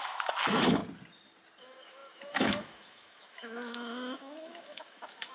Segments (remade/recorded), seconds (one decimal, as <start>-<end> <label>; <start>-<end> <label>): 0.0-0.8 remade; 0.8-1.6 recorded; 1.6-5.3 remade